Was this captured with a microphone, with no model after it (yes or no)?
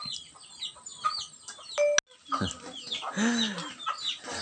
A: yes